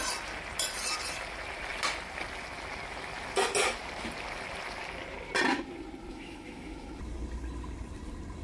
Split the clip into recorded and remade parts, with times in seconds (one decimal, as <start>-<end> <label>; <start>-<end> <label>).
0.0-6.1 recorded; 6.1-6.9 remade; 6.9-8.4 recorded